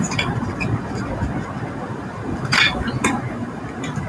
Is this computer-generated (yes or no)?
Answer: yes